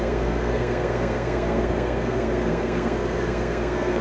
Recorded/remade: remade